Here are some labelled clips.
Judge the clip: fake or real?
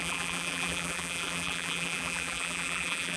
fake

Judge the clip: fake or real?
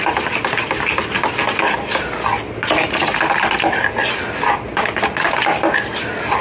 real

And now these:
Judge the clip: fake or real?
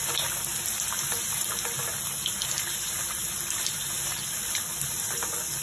real